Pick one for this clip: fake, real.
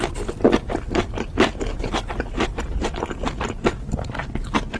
real